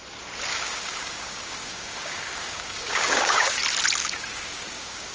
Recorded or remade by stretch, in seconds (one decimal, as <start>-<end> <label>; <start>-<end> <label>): 0.0-0.5 recorded; 0.5-3.6 remade; 3.6-4.0 recorded; 4.0-5.1 remade